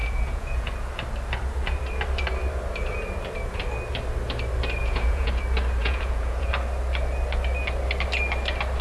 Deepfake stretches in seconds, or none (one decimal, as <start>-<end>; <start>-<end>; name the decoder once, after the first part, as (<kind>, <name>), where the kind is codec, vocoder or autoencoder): 0.0-0.7 (vocoder, Vocos); 4.8-5.3; 5.8-6.5